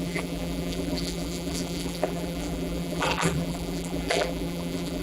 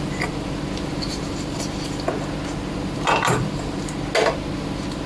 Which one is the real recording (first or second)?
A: second